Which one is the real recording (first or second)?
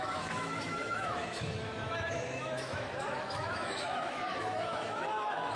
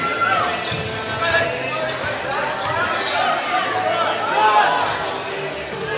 second